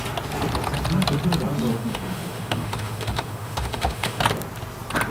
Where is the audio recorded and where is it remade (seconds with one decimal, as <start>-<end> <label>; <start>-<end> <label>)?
0.0-1.7 recorded; 1.7-4.2 remade; 4.2-5.1 recorded